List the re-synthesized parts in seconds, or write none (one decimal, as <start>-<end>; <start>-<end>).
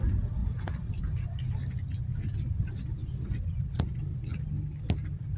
none